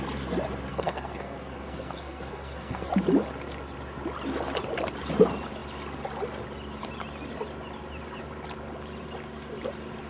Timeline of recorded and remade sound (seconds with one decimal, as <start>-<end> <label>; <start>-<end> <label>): 0.0-0.7 recorded; 0.7-2.9 remade; 2.9-10.1 recorded